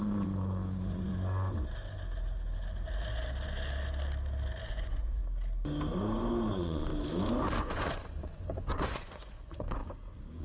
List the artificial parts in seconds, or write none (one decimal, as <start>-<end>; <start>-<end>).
0.0-1.1; 4.7-5.2; 6.5-6.9; 7.6-9.8